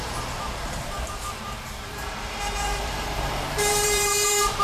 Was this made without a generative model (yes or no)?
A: no